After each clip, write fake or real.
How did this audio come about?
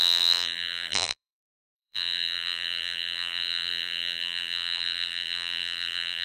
fake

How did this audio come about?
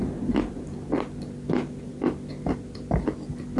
real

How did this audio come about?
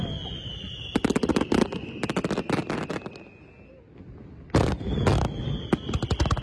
real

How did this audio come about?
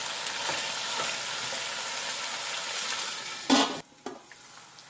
real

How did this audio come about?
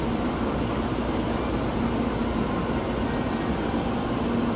real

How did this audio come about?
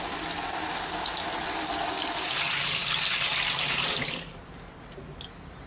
real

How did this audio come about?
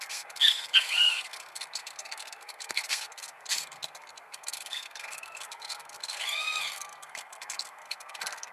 fake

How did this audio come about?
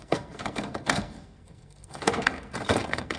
fake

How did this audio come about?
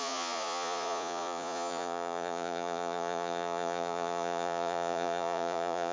fake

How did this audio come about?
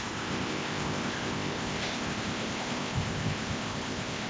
fake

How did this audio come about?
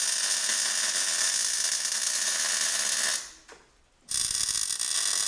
real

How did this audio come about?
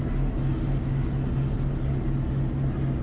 real